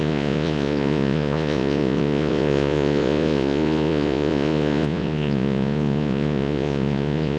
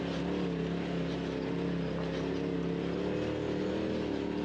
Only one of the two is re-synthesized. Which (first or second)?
first